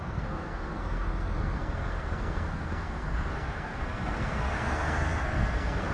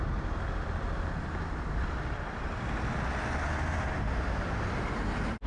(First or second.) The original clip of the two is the second